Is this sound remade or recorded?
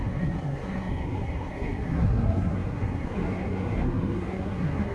remade